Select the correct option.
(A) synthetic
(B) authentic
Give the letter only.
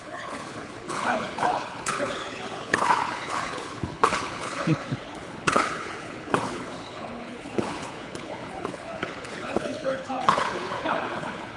A